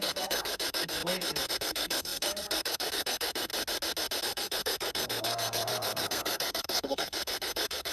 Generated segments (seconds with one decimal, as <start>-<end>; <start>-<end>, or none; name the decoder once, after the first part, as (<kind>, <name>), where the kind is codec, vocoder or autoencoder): 0.0-3.5 (codec, SNAC); 4.2-7.9